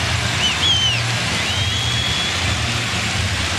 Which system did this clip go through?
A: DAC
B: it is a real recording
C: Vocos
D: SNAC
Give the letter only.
B